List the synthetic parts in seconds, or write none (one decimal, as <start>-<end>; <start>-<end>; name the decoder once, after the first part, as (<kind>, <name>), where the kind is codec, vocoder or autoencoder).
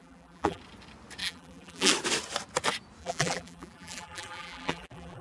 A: 0.0-0.6 (vocoder, BigVGAN v2); 1.2-1.9; 3.0-5.2